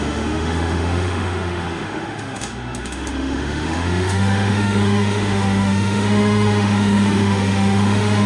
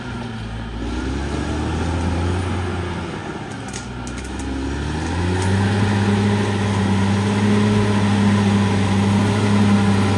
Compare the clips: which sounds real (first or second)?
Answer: second